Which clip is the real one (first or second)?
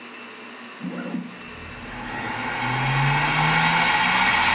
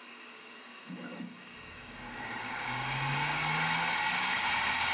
first